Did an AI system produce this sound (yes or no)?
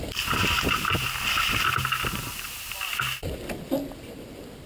no